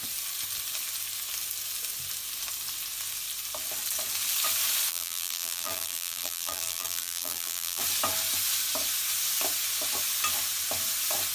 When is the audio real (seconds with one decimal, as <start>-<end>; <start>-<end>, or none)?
0.0-4.9; 7.8-11.3